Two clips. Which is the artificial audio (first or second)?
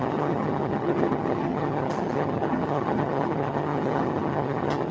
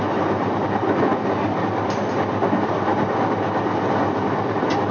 first